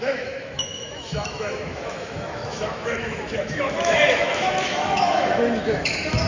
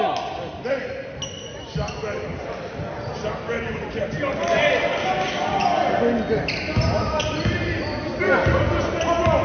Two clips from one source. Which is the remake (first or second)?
first